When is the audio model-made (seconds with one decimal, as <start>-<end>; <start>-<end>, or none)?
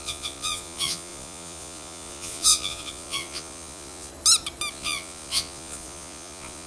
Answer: 0.0-4.1; 4.7-6.7